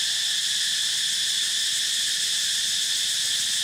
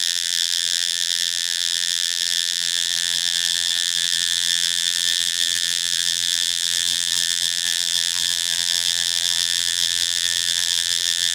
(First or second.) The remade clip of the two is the second